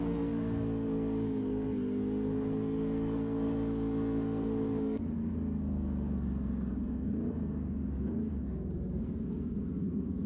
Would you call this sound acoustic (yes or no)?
no